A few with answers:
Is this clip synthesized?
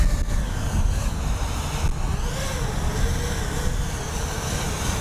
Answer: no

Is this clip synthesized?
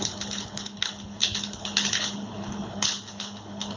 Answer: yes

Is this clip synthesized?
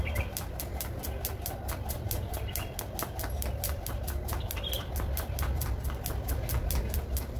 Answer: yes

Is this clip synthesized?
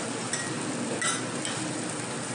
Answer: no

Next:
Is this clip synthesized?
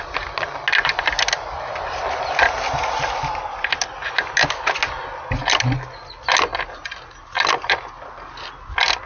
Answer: no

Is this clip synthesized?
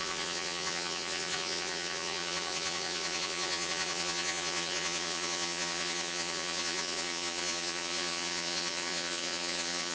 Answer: yes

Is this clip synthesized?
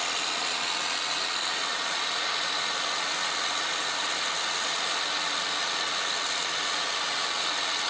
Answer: no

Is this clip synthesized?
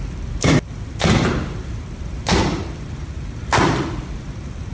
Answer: yes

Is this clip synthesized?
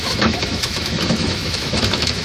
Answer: yes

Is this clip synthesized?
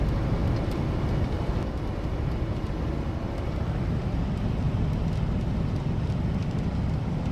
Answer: no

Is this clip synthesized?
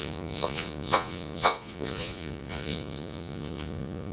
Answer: yes